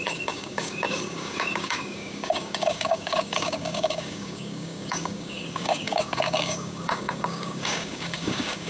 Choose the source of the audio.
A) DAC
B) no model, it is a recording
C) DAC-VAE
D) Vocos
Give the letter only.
A